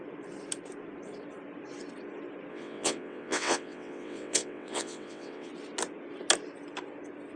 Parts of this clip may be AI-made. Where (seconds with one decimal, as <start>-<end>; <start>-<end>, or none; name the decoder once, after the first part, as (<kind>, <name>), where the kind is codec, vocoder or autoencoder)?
2.5-5.5 (vocoder, WaveNeXt)

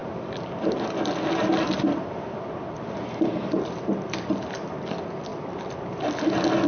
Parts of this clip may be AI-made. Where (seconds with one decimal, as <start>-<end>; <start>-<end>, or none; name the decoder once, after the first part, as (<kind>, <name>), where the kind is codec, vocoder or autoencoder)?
none

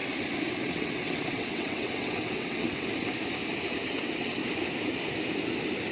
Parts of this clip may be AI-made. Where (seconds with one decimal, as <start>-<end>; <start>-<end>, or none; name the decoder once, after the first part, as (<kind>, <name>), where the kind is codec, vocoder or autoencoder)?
0.5-2.9 (vocoder, WaveNeXt); 3.9-4.4

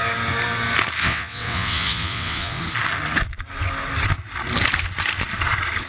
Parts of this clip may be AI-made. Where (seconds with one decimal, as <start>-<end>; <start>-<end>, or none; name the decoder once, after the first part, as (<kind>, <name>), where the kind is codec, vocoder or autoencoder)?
1.0-2.6 (vocoder, WaveNeXt)

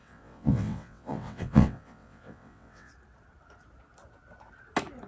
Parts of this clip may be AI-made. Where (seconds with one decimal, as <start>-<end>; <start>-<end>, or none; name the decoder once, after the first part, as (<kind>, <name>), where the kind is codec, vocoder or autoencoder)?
0.0-2.9 (vocoder, WaveNeXt)

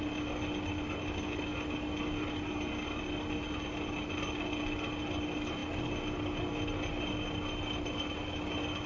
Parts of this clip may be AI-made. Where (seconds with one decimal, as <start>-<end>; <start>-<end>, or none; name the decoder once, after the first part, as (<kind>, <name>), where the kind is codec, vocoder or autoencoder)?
none